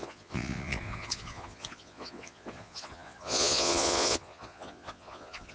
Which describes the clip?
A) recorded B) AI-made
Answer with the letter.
B